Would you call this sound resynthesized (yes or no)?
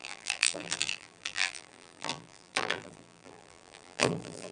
yes